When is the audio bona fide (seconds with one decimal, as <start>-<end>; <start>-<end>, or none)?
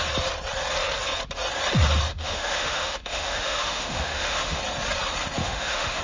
0.0-2.1; 4.6-5.4